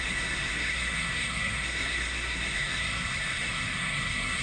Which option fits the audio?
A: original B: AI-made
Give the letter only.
B